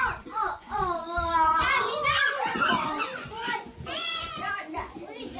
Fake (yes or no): yes